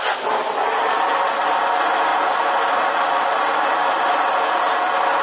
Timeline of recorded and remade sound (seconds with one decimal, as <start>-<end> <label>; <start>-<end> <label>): 0.0-5.2 recorded